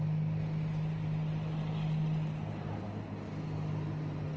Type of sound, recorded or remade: recorded